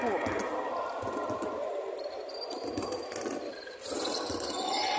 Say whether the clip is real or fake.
real